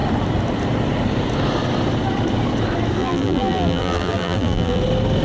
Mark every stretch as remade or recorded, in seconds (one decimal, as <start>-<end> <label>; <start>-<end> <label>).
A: 0.0-3.0 recorded; 3.0-4.8 remade; 4.8-5.2 recorded